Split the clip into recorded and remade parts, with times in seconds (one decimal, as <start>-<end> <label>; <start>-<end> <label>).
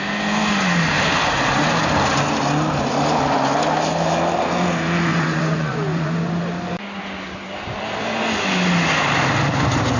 0.0-5.1 recorded; 5.1-6.4 remade; 6.4-10.0 recorded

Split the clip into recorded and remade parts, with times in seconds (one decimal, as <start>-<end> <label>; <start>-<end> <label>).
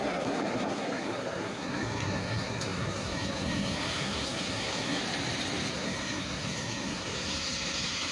0.0-5.0 remade; 5.0-5.7 recorded; 5.7-8.1 remade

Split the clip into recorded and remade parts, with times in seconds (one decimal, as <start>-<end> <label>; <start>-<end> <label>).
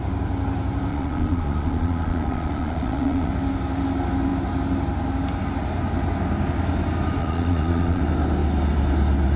0.0-0.9 recorded; 0.9-3.3 remade; 3.3-7.2 recorded; 7.2-8.0 remade; 8.0-9.4 recorded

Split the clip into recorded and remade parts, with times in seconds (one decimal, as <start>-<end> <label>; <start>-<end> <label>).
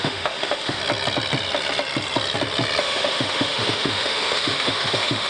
0.0-0.8 remade; 0.8-2.8 recorded; 2.8-5.3 remade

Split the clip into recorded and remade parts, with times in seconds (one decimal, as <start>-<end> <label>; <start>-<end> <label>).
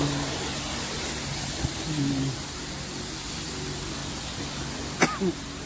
0.0-5.7 recorded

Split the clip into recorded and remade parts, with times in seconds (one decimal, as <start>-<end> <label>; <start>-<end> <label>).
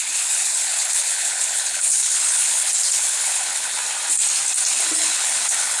0.0-3.8 remade; 3.8-5.0 recorded; 5.0-5.8 remade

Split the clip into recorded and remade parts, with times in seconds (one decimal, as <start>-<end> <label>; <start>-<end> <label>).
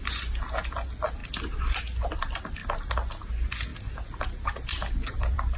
0.0-1.2 recorded; 1.2-1.8 remade; 1.8-4.7 recorded; 4.7-5.6 remade